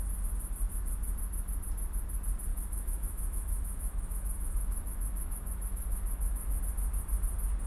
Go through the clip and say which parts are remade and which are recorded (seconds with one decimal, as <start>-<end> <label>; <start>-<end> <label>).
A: 0.0-2.5 recorded; 2.5-6.6 remade; 6.6-7.7 recorded